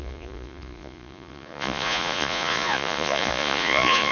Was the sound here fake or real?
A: fake